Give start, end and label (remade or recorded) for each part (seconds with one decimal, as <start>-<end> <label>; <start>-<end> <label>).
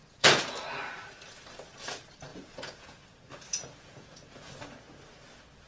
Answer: 0.0-0.6 remade; 0.6-2.3 recorded; 2.3-3.0 remade; 3.0-3.5 recorded; 3.5-4.5 remade; 4.5-5.7 recorded